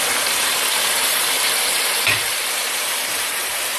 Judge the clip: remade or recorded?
remade